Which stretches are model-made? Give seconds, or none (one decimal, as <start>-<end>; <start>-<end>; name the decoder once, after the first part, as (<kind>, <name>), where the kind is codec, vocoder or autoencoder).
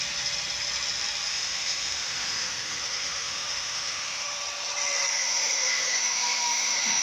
1.3-4.4 (autoencoder, DAC-VAE); 5.1-7.0